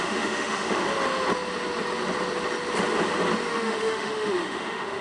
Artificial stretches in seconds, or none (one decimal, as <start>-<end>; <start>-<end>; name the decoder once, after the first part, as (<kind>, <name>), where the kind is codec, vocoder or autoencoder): 0.0-0.8 (autoencoder, DAC-VAE); 3.5-5.0